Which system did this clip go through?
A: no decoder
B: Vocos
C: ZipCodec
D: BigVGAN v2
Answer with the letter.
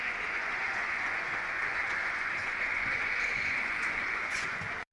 B